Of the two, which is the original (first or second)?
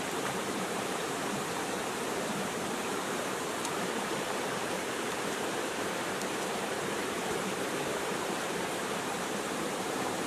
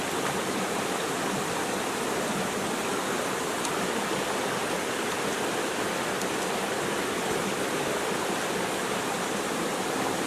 second